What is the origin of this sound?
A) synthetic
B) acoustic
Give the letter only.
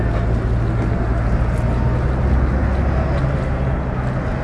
B